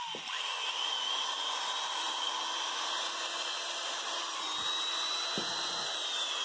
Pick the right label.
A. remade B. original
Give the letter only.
B